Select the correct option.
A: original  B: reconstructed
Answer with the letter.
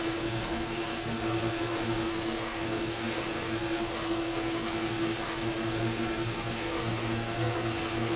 B